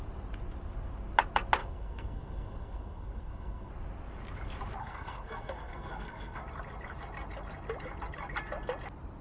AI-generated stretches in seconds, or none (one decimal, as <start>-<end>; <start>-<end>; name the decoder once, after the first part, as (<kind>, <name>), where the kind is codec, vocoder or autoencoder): 1.6-3.7 (codec, SNAC); 4.8-6.4